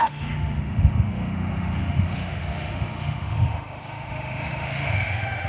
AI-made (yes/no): yes